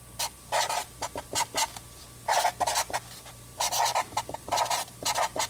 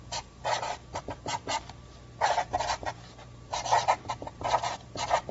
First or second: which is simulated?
second